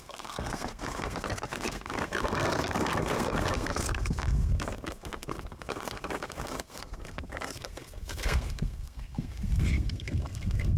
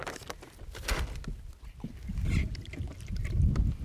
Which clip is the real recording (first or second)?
second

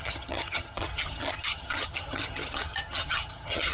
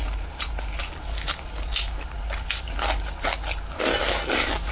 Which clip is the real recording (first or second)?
second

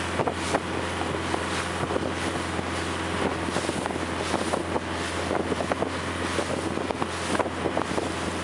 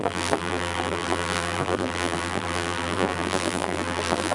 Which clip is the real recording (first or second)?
first